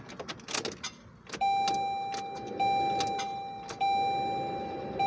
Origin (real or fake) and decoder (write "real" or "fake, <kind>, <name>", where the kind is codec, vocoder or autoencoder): real